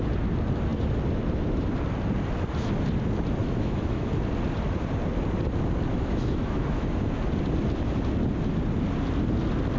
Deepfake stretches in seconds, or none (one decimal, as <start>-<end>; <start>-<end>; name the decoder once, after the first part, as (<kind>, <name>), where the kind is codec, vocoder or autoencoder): 3.4-4.1 (autoencoder, DAC-VAE); 5.9-7.1